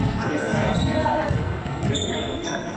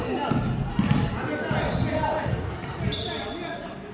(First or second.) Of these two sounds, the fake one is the first